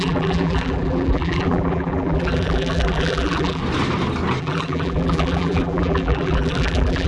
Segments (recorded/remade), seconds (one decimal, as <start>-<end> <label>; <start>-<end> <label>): 0.0-3.6 remade; 3.6-4.4 recorded; 4.4-7.1 remade